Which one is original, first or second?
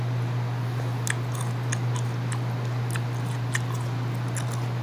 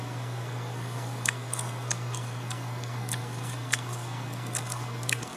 first